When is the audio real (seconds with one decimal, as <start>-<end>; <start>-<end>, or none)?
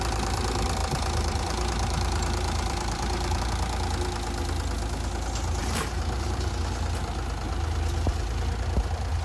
0.0-0.8; 3.4-5.6; 6.5-9.2